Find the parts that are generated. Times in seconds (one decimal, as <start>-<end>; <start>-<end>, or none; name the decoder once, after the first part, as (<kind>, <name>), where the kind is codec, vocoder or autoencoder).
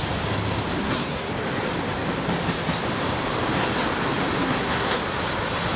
0.8-1.3 (codec, SNAC); 4.4-5.0